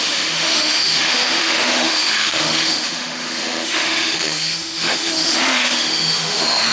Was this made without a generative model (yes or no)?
no